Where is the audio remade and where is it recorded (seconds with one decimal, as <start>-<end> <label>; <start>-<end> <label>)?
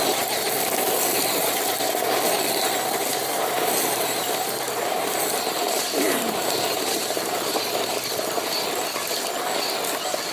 0.0-3.1 recorded; 3.1-7.7 remade; 7.7-10.3 recorded